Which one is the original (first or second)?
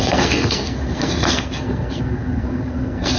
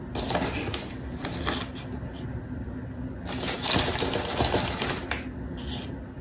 second